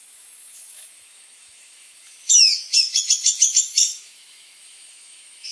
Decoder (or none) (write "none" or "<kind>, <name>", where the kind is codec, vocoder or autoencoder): autoencoder, DAC-VAE